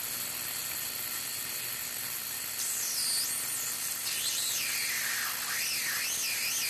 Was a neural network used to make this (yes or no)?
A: no